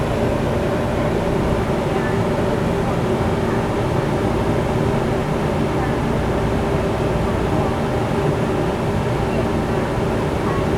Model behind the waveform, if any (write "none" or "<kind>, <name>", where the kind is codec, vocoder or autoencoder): none